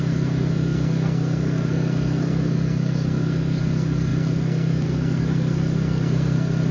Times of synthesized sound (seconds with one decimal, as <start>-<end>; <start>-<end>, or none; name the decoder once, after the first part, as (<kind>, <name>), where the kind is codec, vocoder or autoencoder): 0.0-6.7 (codec, SNAC)